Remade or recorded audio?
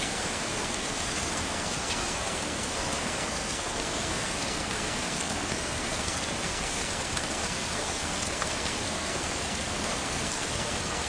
remade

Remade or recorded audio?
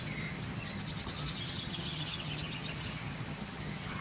remade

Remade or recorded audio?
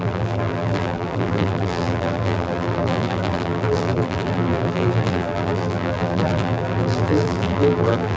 remade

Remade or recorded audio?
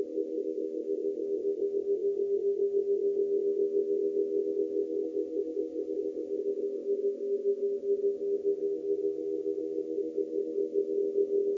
recorded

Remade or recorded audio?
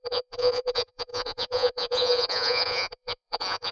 remade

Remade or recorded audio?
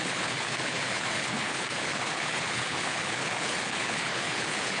remade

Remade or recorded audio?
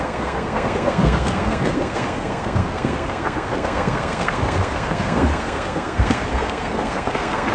remade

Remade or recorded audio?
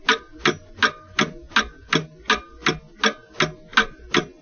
recorded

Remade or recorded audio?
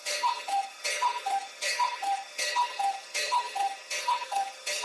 remade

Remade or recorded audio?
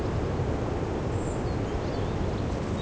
recorded